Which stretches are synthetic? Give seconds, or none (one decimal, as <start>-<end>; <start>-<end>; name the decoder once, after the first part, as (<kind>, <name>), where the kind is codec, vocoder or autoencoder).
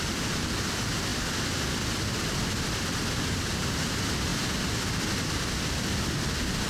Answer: none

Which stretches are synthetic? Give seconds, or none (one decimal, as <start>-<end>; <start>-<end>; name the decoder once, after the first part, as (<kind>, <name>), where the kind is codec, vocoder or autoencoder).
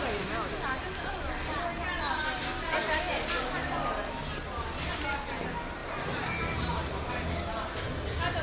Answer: none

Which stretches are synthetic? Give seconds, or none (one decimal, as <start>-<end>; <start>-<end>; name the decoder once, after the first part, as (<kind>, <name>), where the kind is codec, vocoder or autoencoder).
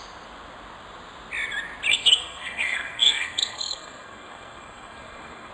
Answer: 1.9-5.5 (codec, SNAC)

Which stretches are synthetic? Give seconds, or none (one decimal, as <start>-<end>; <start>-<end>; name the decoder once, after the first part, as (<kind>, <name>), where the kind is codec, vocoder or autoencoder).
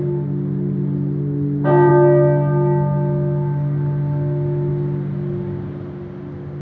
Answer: none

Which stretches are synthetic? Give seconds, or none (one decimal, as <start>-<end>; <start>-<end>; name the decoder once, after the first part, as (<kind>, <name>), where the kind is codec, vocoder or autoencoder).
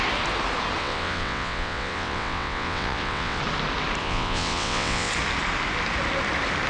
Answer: 0.8-3.4 (vocoder, WaveNeXt); 4.0-5.1